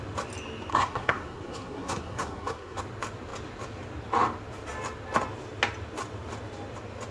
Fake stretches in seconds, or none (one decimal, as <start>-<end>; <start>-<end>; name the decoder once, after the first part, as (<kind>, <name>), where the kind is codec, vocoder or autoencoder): 0.7-2.8 (codec, SNAC)